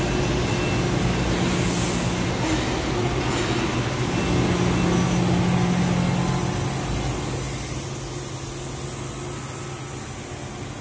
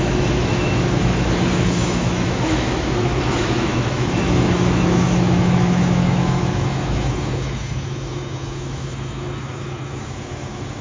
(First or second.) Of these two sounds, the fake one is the second